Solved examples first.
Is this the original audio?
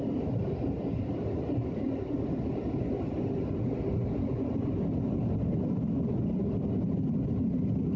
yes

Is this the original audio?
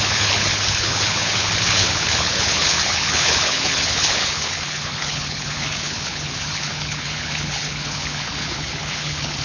no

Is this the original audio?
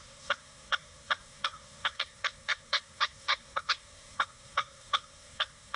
no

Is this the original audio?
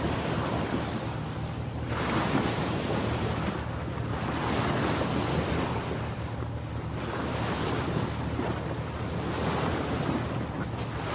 yes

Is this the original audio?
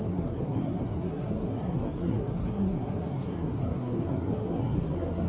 no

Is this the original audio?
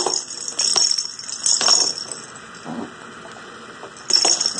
yes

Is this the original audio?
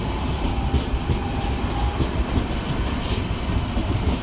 yes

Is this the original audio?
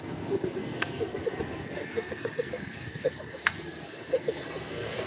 no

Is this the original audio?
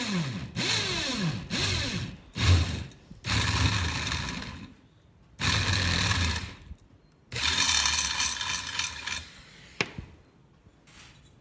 yes